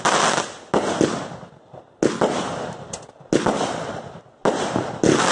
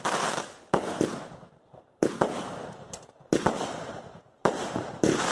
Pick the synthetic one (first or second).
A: second